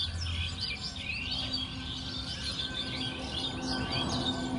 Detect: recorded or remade recorded